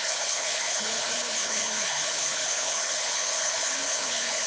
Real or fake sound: fake